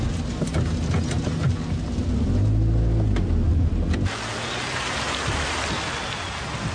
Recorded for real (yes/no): yes